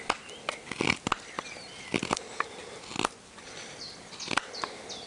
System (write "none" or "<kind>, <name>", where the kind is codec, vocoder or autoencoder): none